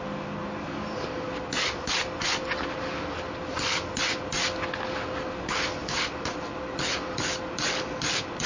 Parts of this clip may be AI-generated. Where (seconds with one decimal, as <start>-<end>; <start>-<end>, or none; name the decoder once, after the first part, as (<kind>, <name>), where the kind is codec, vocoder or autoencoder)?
none